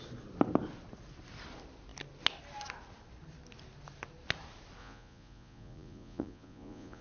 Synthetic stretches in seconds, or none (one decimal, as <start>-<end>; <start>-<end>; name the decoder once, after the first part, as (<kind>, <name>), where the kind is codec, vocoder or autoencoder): 4.8-7.0 (vocoder, Vocos)